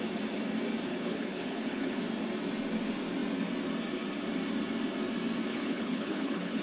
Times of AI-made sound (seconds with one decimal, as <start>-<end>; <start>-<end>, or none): 0.9-2.0; 5.5-6.6